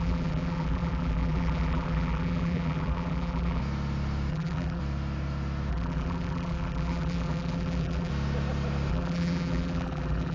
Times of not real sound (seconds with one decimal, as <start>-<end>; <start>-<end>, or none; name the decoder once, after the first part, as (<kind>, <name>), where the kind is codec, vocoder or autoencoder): 0.0-3.6 (vocoder, BigVGAN v2); 4.3-4.8; 5.7-8.1; 8.9-10.3